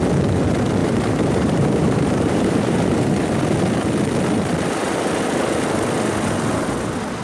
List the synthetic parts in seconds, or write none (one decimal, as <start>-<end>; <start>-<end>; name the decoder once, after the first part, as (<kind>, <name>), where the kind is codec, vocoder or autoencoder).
0.8-3.4 (vocoder, BigVGAN v2)